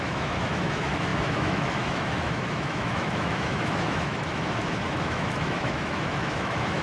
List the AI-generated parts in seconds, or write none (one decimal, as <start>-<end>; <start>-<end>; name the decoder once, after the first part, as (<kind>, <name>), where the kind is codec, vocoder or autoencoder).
0.0-6.8 (autoencoder, DAC-VAE)